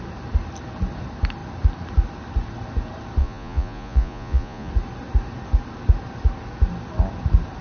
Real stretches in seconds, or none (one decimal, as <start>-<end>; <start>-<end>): 0.0-3.2; 4.7-7.6